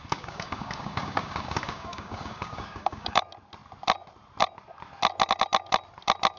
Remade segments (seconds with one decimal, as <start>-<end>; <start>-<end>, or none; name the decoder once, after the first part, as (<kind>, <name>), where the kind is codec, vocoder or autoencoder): 0.0-3.2 (codec, DAC)